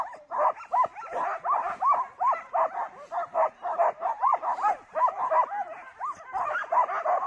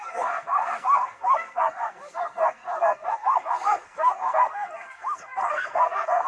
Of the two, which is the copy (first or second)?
second